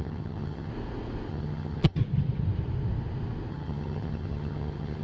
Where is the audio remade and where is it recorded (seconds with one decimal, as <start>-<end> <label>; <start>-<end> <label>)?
0.0-0.7 remade; 0.7-1.3 recorded; 1.3-2.0 remade; 2.0-3.5 recorded; 3.5-5.0 remade